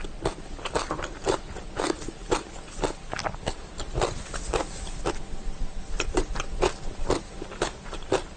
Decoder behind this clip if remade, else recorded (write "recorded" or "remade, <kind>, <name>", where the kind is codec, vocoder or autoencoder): recorded